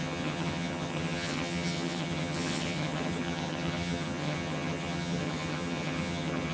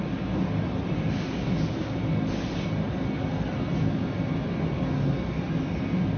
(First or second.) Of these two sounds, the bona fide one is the second